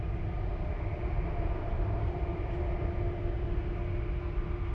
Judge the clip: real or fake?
real